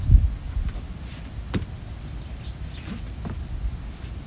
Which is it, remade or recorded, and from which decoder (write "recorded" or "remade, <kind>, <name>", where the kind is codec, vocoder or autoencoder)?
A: recorded